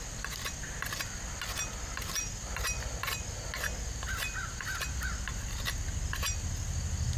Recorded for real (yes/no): yes